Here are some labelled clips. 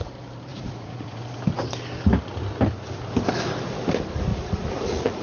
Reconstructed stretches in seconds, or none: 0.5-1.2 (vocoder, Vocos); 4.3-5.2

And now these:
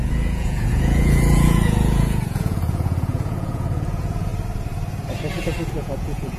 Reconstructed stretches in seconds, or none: 0.0-4.3 (vocoder, Vocos); 5.8-6.4

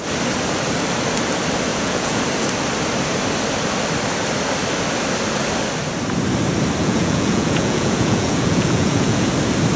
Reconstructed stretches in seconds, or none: 1.7-2.2 (vocoder, Vocos); 6.8-9.3

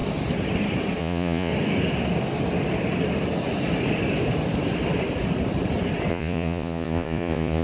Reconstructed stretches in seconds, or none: 1.0-1.5 (vocoder, Vocos); 6.1-7.6

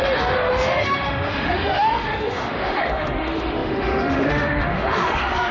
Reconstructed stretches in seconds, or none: 0.0-5.5 (autoencoder, DAC-VAE)

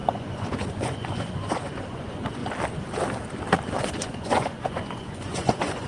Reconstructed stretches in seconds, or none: 0.0-2.4 (vocoder, Vocos); 3.8-5.9